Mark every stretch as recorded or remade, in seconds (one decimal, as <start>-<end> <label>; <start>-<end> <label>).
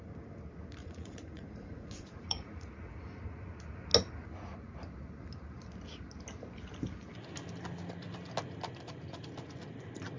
0.0-0.8 recorded; 0.8-2.7 remade; 2.7-10.2 recorded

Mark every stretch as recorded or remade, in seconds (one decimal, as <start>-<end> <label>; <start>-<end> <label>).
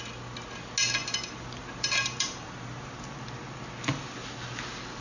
0.0-1.0 recorded; 1.0-3.4 remade; 3.4-5.0 recorded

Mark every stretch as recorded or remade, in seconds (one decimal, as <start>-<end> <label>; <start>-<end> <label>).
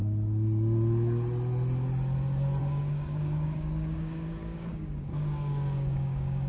0.0-2.6 recorded; 2.6-6.5 remade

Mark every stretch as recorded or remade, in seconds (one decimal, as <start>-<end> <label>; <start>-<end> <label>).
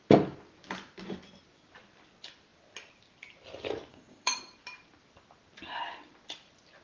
0.0-3.9 recorded; 3.9-4.4 remade; 4.4-6.8 recorded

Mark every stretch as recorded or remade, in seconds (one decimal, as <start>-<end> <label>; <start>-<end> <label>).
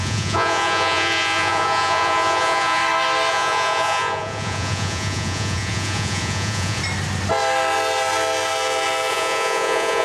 0.0-2.8 remade; 2.8-3.3 recorded; 3.3-6.8 remade; 6.8-9.1 recorded; 9.1-10.0 remade